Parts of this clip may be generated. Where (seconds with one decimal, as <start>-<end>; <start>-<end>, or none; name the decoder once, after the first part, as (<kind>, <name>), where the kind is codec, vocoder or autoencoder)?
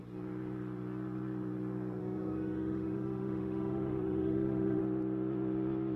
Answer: 2.0-4.8 (autoencoder, DAC-VAE)